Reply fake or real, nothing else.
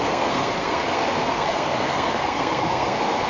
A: fake